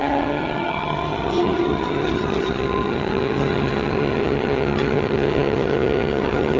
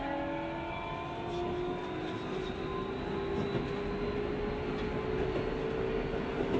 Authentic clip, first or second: second